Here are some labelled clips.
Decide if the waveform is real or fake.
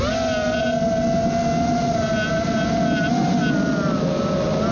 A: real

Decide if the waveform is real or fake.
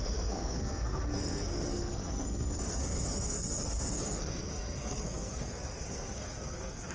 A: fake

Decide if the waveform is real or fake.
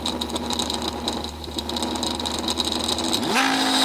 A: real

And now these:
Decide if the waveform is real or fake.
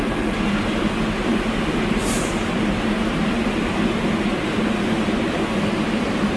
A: real